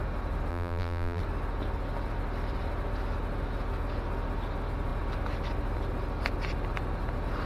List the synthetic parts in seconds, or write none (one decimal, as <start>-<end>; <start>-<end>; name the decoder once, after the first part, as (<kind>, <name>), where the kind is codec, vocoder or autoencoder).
0.5-1.2 (vocoder, BigVGAN v2)